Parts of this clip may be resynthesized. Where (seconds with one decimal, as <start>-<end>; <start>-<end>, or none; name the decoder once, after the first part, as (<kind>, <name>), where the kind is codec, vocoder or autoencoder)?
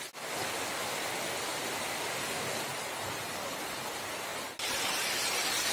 none